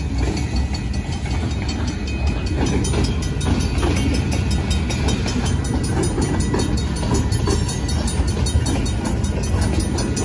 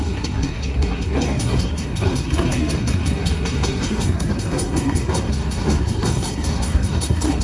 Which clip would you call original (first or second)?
first